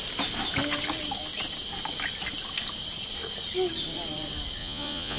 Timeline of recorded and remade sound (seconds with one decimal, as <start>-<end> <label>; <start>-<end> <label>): 0.0-4.6 recorded; 4.6-5.2 remade